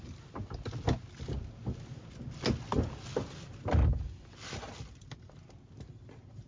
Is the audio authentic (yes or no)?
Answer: yes